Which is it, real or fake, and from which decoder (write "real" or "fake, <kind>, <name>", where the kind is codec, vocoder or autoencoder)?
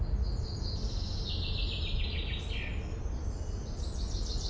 real